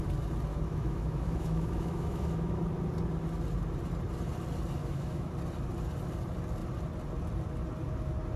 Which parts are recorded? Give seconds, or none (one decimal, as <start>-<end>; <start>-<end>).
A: 0.0-0.5; 2.6-4.8; 5.3-8.4